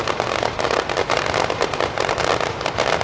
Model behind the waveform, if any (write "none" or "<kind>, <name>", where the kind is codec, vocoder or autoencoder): none